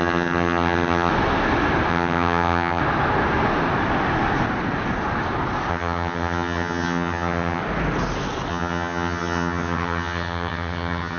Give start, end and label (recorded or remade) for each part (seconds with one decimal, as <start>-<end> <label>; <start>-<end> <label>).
0.0-1.1 remade; 1.1-1.9 recorded; 1.9-2.8 remade; 2.8-5.7 recorded; 5.7-7.6 remade; 7.6-8.5 recorded; 8.5-11.2 remade